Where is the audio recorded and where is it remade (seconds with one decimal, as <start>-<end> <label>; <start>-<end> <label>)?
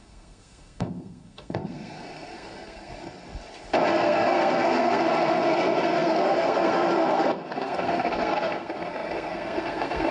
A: 0.0-2.9 remade; 2.9-3.9 recorded; 3.9-10.1 remade